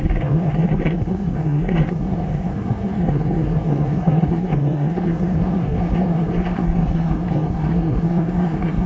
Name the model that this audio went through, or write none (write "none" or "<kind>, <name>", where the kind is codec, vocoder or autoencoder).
codec, SNAC